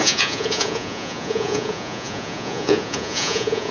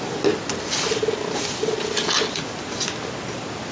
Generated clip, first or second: first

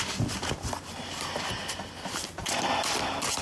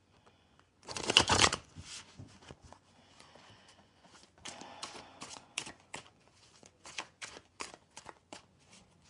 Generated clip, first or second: second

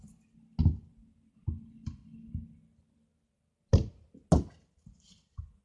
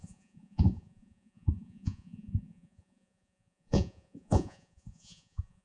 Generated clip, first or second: second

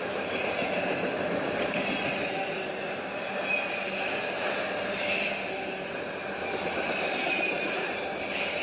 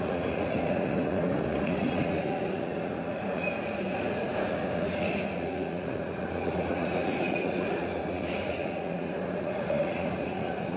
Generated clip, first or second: second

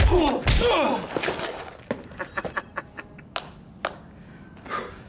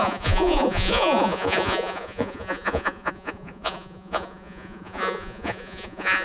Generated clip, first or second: second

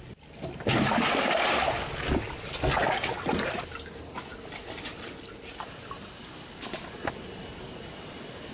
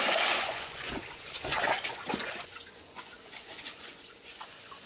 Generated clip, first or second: second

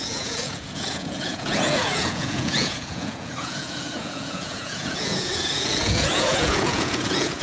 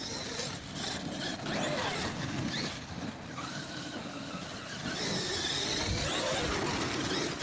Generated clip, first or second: first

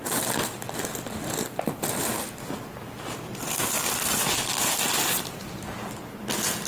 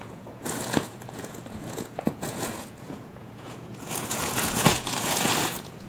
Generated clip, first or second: second